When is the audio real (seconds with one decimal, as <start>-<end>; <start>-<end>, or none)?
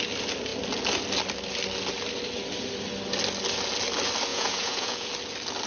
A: 0.0-4.3; 5.1-5.7